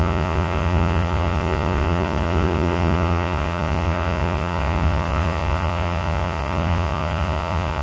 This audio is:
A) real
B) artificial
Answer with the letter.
B